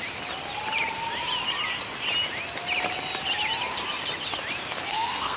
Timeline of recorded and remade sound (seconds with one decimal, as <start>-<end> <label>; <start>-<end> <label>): 0.0-4.9 recorded; 4.9-5.4 remade